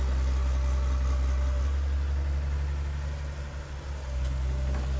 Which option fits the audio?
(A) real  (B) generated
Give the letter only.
A